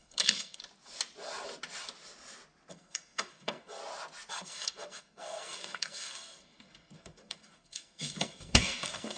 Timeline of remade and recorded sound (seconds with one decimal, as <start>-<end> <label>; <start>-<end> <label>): 0.0-0.6 remade; 0.6-2.7 recorded; 2.7-3.8 remade; 3.8-4.3 recorded; 4.3-9.2 remade